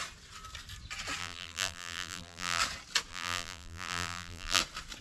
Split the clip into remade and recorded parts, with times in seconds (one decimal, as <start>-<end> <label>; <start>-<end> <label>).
0.0-1.2 recorded; 1.2-2.6 remade; 2.6-3.1 recorded; 3.1-4.6 remade; 4.6-5.0 recorded